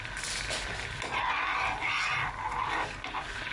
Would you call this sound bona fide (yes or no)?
yes